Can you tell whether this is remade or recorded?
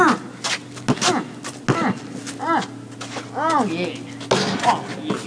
recorded